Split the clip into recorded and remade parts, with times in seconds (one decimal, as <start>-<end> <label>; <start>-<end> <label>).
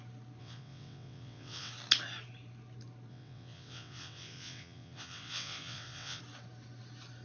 0.0-0.4 recorded; 0.4-1.7 remade; 1.7-3.1 recorded; 3.1-6.2 remade; 6.2-7.2 recorded